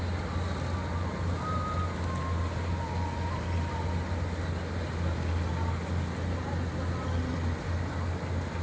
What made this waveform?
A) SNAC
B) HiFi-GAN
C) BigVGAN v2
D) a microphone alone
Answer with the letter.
D